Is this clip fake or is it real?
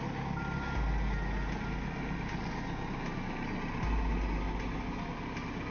real